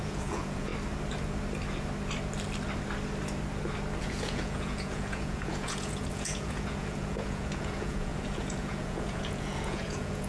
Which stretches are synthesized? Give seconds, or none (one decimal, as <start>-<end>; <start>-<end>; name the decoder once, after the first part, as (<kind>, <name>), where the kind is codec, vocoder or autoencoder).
0.0-0.7 (vocoder, Vocos); 4.0-10.3